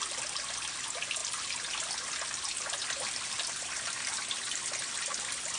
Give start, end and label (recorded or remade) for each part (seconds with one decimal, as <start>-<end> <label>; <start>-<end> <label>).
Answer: 0.0-1.2 recorded; 1.2-1.8 remade; 1.8-2.8 recorded; 2.8-5.6 remade